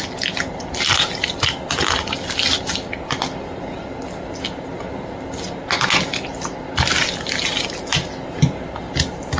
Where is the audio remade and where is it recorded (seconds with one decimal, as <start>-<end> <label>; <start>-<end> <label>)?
0.0-9.4 recorded